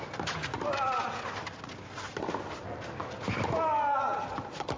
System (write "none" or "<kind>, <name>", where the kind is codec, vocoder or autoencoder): none